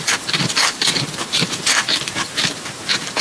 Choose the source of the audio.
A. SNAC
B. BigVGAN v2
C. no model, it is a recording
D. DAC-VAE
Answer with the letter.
B